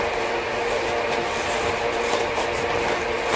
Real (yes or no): yes